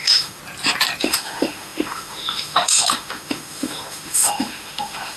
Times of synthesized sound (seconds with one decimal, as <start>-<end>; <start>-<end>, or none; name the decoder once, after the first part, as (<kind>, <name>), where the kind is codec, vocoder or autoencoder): 0.0-0.4 (autoencoder, DAC-VAE); 1.0-5.2